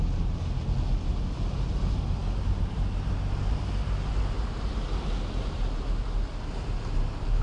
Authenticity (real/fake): real